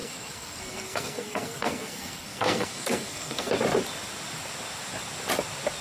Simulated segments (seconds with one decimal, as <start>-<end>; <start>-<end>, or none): 0.0-3.5

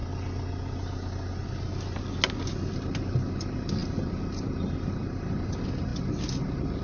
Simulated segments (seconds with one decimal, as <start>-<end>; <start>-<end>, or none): 3.8-5.5

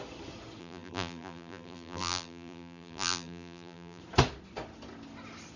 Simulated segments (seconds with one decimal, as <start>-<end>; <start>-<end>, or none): 0.6-4.0

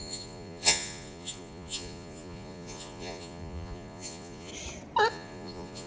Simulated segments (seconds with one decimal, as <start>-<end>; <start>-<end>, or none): 0.0-4.5; 5.1-5.9